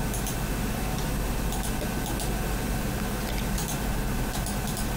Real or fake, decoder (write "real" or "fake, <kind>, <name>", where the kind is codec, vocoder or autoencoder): real